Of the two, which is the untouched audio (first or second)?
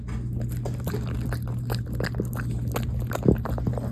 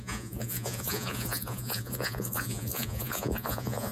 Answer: first